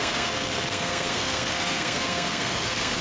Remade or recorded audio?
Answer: remade